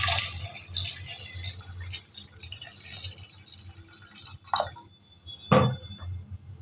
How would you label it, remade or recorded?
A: recorded